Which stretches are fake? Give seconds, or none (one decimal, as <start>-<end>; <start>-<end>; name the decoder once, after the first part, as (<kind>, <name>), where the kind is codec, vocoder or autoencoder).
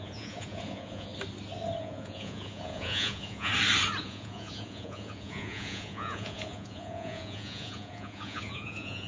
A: 0.0-1.1 (vocoder, Vocos); 1.8-3.5; 4.0-9.1